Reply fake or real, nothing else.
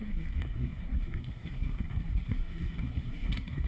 fake